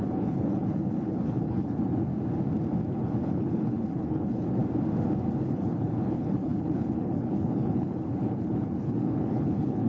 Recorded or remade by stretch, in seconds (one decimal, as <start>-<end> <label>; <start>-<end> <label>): 0.0-2.1 remade; 2.1-2.9 recorded; 2.9-4.6 remade; 4.6-5.4 recorded; 5.4-9.9 remade